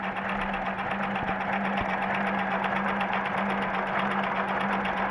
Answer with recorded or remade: recorded